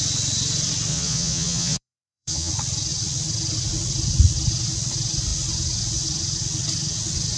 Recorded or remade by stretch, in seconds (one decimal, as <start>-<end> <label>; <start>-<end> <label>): 0.0-0.9 recorded; 0.9-2.5 remade; 2.5-7.4 recorded